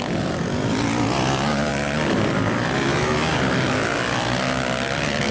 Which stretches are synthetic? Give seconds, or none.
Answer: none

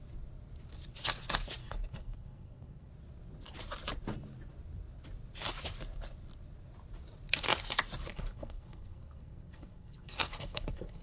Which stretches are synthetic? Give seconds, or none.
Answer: 1.6-2.9 (codec, SNAC); 8.1-11.0

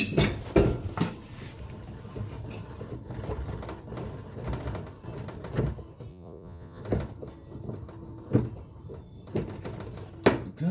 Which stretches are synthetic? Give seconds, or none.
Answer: 6.1-6.8 (vocoder, Vocos)

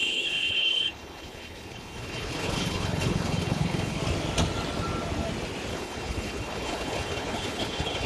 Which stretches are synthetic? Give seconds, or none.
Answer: 0.0-4.0 (codec, HILCodec); 5.7-8.1